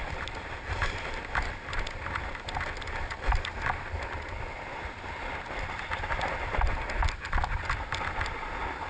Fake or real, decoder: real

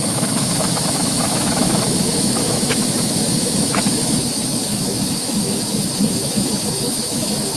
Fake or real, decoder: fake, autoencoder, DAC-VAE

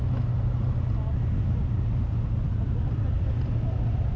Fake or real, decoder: real